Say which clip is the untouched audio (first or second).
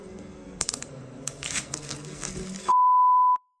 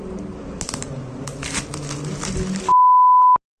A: second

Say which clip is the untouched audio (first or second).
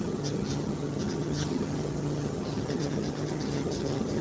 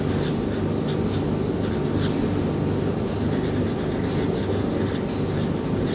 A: second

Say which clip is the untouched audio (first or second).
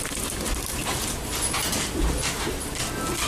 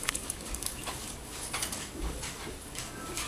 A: first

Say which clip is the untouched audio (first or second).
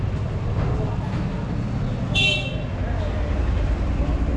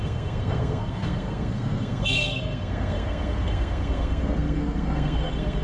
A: first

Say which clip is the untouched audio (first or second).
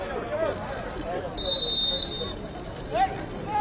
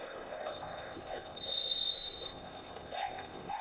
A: first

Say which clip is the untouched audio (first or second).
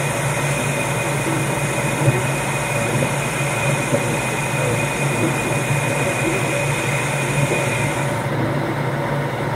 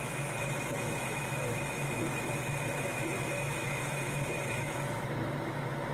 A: first